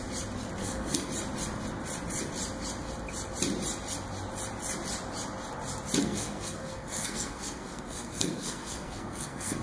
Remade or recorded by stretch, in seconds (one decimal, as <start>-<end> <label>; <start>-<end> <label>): 0.0-0.6 recorded; 0.6-1.1 remade; 1.1-6.0 recorded; 6.0-9.6 remade